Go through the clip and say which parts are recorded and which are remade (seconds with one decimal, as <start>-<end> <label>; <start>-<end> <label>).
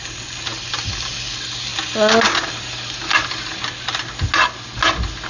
0.0-5.3 recorded